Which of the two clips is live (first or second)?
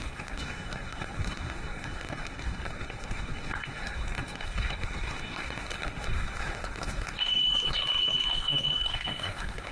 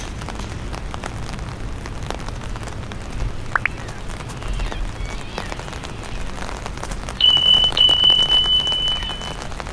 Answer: second